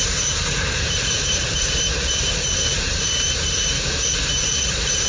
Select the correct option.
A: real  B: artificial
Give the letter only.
B